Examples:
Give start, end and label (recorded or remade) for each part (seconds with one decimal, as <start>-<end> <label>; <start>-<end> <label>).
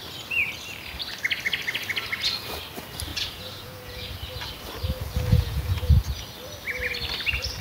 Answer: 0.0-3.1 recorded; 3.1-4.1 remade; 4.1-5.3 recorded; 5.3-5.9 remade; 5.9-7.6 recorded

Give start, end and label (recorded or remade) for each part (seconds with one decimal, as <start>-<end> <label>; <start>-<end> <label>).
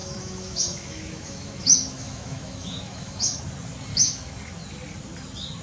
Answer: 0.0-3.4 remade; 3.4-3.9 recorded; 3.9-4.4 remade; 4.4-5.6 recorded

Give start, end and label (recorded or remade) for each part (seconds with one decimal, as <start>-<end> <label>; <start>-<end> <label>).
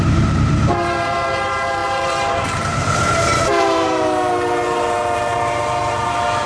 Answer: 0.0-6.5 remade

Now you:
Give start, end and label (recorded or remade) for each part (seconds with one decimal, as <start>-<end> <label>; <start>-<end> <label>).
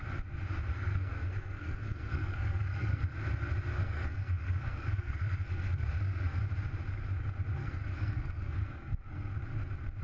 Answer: 0.0-0.7 recorded; 0.7-3.2 remade; 3.2-3.8 recorded; 3.8-6.4 remade; 6.4-7.6 recorded; 7.6-9.3 remade; 9.3-10.0 recorded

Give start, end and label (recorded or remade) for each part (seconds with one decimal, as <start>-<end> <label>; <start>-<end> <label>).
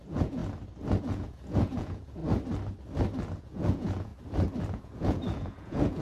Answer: 0.0-0.4 remade; 0.4-1.0 recorded; 1.0-2.2 remade; 2.2-3.4 recorded; 3.4-4.1 remade; 4.1-4.7 recorded; 4.7-6.0 remade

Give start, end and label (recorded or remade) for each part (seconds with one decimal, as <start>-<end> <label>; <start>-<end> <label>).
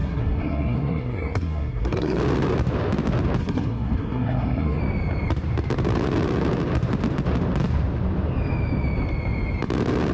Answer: 0.0-2.2 remade; 2.2-3.4 recorded; 3.4-4.8 remade; 4.8-10.1 recorded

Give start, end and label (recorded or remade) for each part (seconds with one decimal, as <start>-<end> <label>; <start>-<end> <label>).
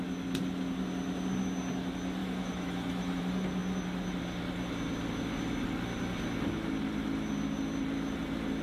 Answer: 0.0-2.2 recorded; 2.2-3.2 remade; 3.2-8.6 recorded